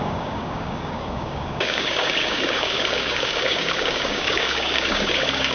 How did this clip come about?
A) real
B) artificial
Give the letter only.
B